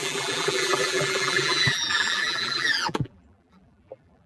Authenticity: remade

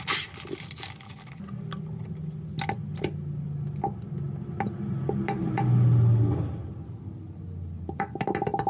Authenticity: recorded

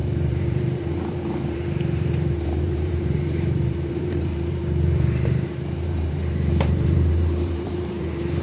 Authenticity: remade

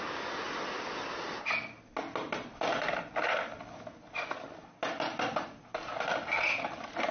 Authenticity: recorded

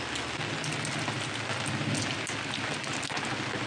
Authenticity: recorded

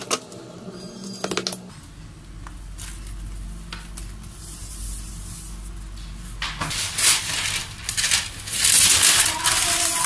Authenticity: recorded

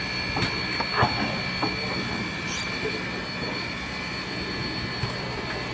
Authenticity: recorded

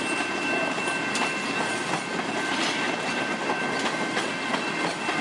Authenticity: recorded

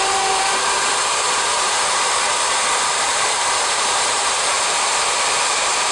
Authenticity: remade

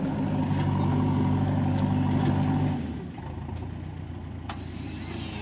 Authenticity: recorded